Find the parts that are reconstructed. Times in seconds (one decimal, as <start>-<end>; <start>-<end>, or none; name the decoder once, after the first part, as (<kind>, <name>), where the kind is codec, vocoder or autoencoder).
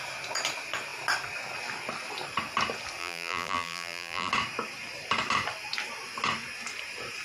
3.0-4.3 (vocoder, BigVGAN v2)